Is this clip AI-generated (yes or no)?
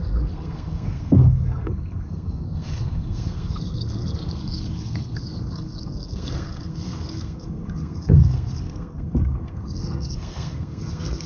yes